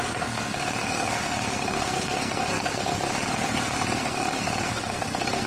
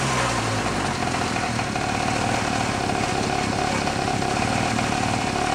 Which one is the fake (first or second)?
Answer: first